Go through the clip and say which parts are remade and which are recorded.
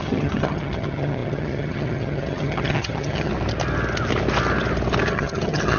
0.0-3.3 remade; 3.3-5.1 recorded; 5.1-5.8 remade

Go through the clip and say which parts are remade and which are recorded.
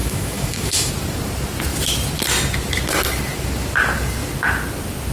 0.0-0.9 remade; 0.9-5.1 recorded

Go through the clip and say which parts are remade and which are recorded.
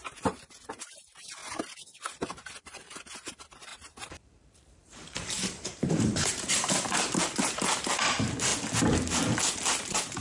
0.0-1.4 remade; 1.4-2.6 recorded; 2.6-8.5 remade; 8.5-9.5 recorded; 9.5-10.2 remade